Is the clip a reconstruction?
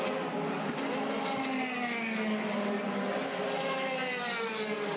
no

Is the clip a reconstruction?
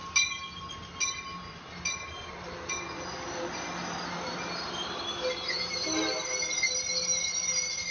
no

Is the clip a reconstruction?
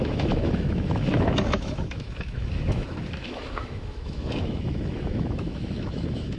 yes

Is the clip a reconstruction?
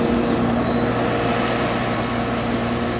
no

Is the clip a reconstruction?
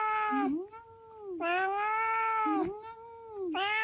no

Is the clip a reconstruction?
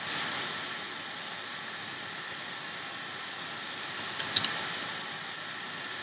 no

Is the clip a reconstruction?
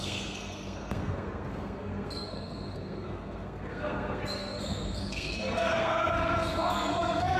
yes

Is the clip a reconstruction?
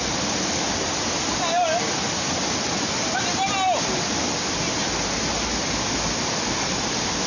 no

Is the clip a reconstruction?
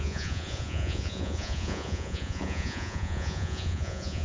yes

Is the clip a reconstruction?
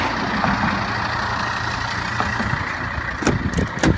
no